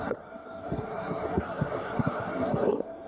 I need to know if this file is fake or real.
fake